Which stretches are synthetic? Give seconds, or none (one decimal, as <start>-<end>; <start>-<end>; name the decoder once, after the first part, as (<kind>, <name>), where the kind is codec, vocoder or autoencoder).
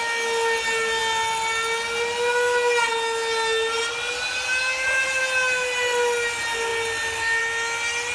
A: none